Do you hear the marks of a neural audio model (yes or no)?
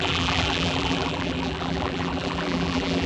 yes